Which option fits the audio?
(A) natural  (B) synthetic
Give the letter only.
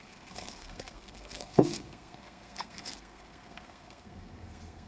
B